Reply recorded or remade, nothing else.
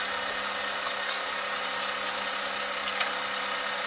recorded